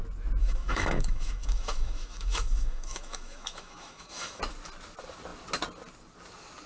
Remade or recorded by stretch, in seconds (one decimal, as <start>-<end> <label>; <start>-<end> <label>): 0.0-0.4 recorded; 0.4-4.4 remade; 4.4-6.7 recorded